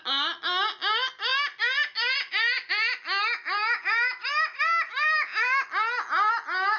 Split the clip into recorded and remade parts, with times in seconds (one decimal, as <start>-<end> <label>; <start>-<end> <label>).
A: 0.0-6.8 recorded